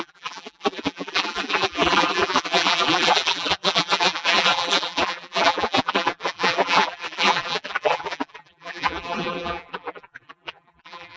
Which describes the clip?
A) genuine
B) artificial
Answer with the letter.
B